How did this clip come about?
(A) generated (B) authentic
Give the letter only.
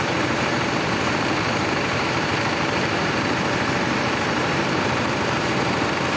A